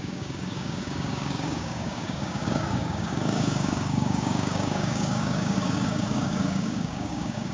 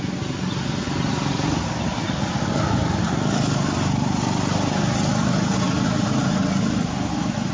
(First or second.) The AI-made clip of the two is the first